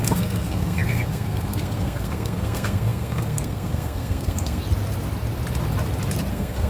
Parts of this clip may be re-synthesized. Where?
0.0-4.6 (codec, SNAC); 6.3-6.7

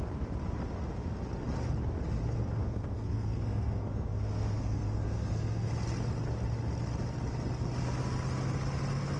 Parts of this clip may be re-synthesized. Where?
2.6-5.7 (codec, SNAC)

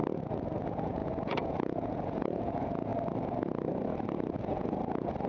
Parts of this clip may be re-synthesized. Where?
0.6-2.9 (vocoder, Vocos); 4.4-5.3